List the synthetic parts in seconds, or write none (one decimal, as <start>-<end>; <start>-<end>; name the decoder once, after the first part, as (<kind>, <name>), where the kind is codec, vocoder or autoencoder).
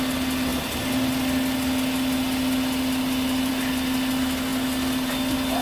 none